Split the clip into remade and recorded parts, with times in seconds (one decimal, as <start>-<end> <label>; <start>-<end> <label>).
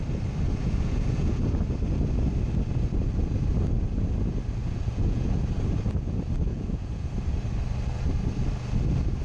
0.0-0.6 recorded; 0.6-1.6 remade; 1.6-4.6 recorded; 4.6-5.4 remade; 5.4-6.5 recorded; 6.5-7.1 remade; 7.1-9.2 recorded